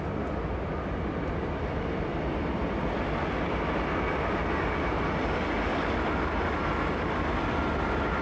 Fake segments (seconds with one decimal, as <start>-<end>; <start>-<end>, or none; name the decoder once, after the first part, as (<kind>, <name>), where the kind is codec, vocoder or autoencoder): none